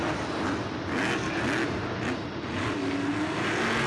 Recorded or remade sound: recorded